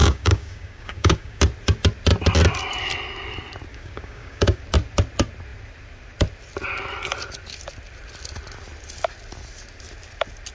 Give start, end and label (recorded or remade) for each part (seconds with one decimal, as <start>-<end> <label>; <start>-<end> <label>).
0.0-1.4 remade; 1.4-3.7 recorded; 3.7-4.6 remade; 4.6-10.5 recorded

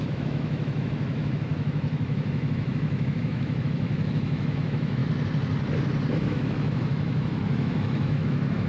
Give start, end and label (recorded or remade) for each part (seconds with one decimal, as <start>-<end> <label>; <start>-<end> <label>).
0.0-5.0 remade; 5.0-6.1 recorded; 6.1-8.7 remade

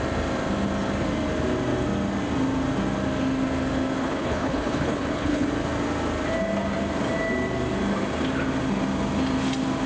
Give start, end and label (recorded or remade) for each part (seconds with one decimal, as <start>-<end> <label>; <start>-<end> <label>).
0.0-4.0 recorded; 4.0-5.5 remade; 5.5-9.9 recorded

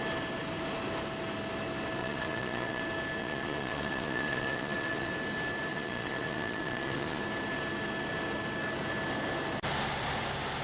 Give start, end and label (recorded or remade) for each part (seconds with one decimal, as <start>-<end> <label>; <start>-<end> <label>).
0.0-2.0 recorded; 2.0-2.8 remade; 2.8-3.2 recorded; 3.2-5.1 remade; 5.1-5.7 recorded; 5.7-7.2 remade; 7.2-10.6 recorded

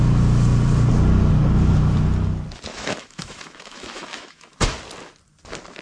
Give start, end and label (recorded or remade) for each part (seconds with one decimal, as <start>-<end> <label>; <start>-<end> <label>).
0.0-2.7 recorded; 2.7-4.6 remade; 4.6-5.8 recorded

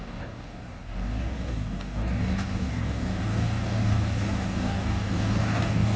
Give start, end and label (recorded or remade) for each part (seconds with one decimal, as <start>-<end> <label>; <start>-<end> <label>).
0.0-6.0 remade